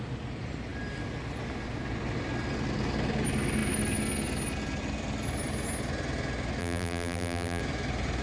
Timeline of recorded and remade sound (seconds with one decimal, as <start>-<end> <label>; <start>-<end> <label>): 0.0-6.6 recorded; 6.6-7.6 remade; 7.6-8.2 recorded